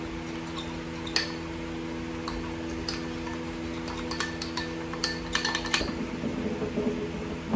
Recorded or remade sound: recorded